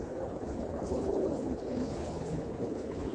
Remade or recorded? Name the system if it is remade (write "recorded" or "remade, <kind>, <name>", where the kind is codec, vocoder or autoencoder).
remade, codec, HILCodec